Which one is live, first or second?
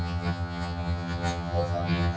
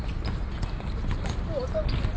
second